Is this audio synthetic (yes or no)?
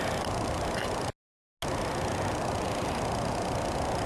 no